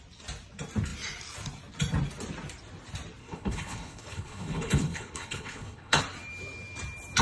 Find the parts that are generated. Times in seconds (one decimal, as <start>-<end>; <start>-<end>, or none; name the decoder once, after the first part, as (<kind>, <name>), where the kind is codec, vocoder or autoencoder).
3.2-6.0 (codec, HILCodec)